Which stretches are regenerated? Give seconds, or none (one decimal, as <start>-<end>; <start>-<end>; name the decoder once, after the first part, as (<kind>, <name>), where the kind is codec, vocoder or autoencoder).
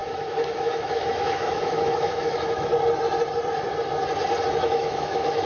0.0-2.7 (autoencoder, DAC-VAE); 4.6-5.5